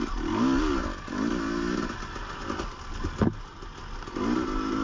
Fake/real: real